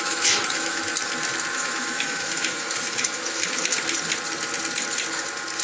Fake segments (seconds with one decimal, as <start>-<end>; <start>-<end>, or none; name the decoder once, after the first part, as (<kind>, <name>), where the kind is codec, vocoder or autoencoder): 0.0-0.9 (autoencoder, DAC-VAE); 1.5-3.7